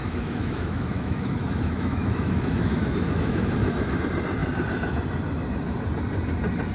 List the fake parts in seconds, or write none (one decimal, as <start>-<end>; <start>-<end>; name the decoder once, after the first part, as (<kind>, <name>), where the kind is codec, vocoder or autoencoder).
0.0-4.0 (autoencoder, DAC-VAE)